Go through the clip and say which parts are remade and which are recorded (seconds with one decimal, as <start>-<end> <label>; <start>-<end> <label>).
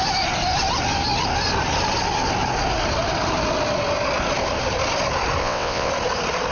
0.0-5.4 recorded; 5.4-5.9 remade; 5.9-6.5 recorded